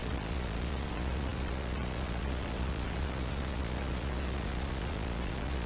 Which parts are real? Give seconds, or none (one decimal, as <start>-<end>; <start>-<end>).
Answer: none